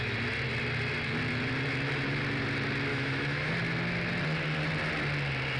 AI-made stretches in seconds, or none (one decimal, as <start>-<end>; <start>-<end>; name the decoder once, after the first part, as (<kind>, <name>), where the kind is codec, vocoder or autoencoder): 2.9-3.5 (autoencoder, DAC-VAE)